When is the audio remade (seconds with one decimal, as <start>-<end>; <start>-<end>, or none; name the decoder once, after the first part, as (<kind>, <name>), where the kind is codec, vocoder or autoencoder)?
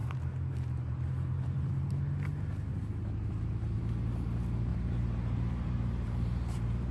0.0-1.9 (vocoder, BigVGAN v2); 2.7-3.8; 4.7-6.9